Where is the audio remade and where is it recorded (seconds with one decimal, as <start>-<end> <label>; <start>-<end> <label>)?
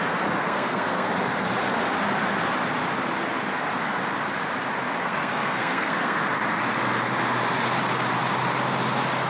0.0-0.4 recorded; 0.4-1.1 remade; 1.1-5.0 recorded; 5.0-6.2 remade; 6.2-9.3 recorded